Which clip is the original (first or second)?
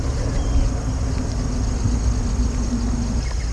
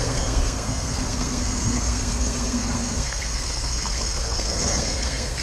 first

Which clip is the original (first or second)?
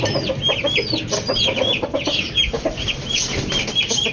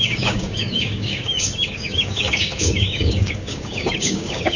first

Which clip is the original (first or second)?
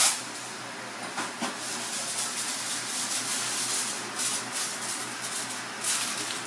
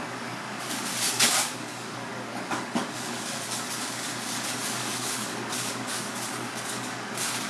first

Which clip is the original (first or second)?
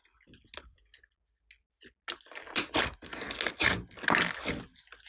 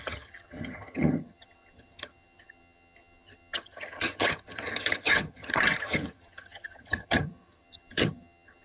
first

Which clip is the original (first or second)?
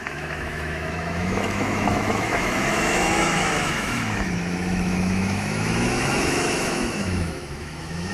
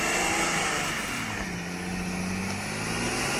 second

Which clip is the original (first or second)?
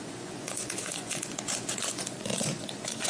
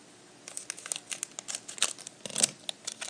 second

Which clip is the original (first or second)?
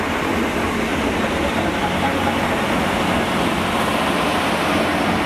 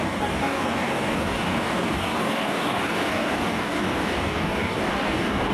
first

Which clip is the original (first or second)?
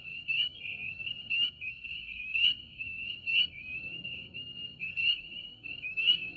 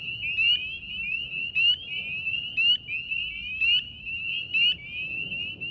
second